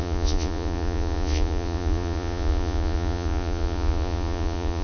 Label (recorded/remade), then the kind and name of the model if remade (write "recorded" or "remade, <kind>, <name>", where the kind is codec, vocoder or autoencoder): remade, vocoder, Vocos